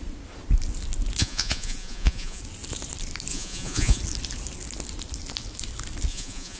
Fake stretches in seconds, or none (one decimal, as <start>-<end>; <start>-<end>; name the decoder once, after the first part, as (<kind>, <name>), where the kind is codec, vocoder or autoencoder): 1.2-2.4 (vocoder, Vocos); 3.3-4.0; 6.1-6.6